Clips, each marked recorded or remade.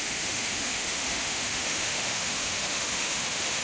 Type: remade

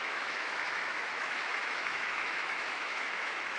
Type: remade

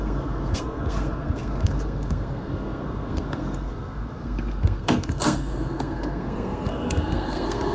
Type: remade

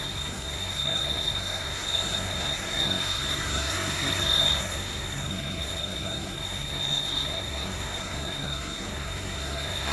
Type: remade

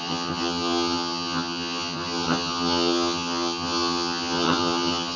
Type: remade